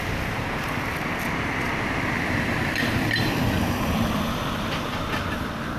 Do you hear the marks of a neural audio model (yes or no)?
yes